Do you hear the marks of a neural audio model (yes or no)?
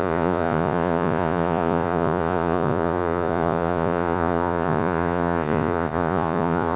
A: yes